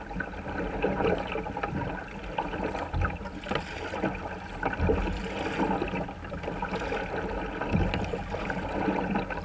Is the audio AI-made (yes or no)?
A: no